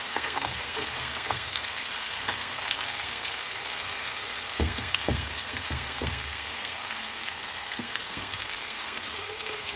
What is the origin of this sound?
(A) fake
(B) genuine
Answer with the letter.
A